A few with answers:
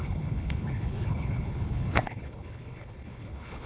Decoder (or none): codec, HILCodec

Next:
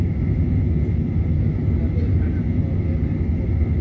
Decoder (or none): none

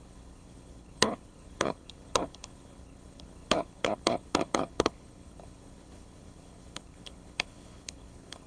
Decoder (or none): codec, HILCodec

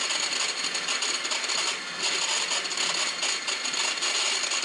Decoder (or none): none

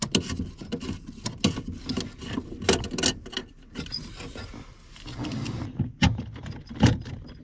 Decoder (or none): none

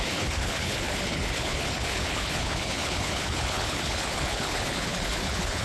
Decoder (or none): codec, HILCodec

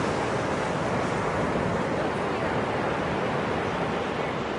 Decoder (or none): none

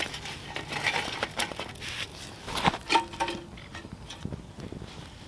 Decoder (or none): none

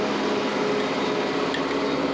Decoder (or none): none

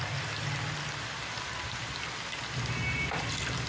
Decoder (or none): none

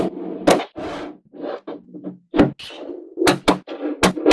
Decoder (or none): none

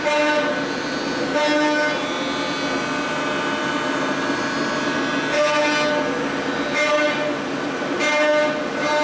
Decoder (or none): none